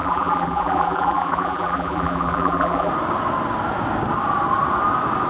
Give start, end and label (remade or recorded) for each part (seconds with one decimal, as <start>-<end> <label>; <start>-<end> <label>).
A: 0.0-2.9 remade; 2.9-5.3 recorded